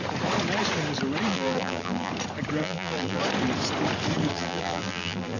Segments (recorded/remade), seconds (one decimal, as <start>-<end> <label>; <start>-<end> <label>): 0.0-1.3 recorded; 1.3-2.1 remade; 2.1-2.6 recorded; 2.6-3.2 remade; 3.2-4.3 recorded; 4.3-5.4 remade